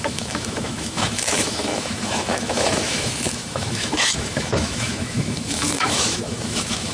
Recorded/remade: remade